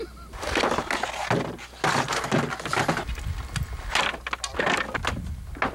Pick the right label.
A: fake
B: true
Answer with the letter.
B